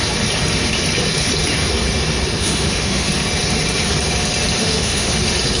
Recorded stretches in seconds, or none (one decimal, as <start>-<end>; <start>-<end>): 0.0-2.4; 3.1-4.6; 5.1-5.6